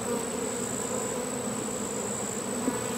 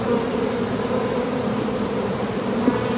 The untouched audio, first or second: first